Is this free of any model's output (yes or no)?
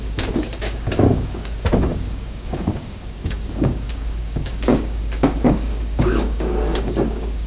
no